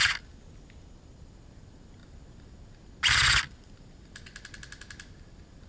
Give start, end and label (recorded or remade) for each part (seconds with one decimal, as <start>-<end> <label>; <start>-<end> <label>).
0.0-5.7 recorded